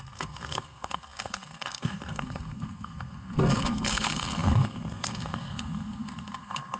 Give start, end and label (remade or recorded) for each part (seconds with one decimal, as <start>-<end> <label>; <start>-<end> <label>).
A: 0.0-6.8 remade